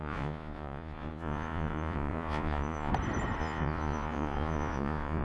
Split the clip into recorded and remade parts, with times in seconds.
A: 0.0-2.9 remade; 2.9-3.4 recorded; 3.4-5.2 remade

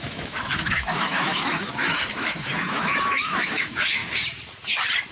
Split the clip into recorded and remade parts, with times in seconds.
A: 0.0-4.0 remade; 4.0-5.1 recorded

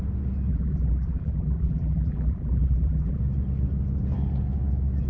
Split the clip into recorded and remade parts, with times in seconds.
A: 0.0-0.5 recorded; 0.5-3.2 remade; 3.2-5.1 recorded

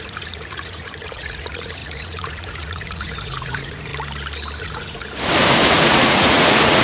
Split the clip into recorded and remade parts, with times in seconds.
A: 0.0-3.9 remade; 3.9-4.6 recorded; 4.6-5.0 remade; 5.0-5.7 recorded; 5.7-6.8 remade

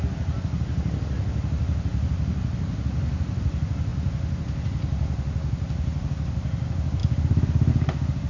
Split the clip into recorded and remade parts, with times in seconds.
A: 0.0-1.9 remade; 1.9-2.8 recorded; 2.8-3.9 remade; 3.9-6.1 recorded; 6.1-7.0 remade; 7.0-7.7 recorded; 7.7-8.3 remade